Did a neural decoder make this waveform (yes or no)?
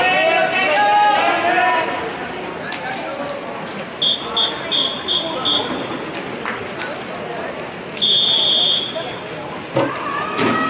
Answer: no